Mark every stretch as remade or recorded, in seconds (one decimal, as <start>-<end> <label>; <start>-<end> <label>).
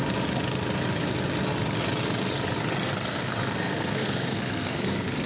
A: 0.0-3.1 recorded; 3.1-5.3 remade